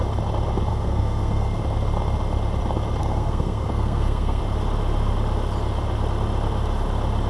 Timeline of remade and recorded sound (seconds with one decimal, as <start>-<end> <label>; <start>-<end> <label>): 0.0-0.7 recorded; 0.7-1.6 remade; 1.6-3.0 recorded; 3.0-4.4 remade; 4.4-7.3 recorded